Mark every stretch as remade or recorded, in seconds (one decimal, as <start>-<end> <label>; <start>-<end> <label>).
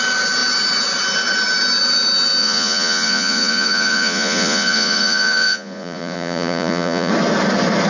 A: 0.0-2.4 recorded; 2.4-7.1 remade; 7.1-7.9 recorded